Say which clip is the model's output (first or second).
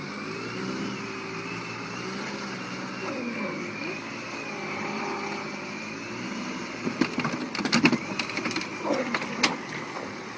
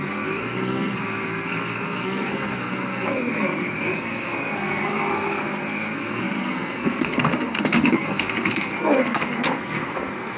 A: second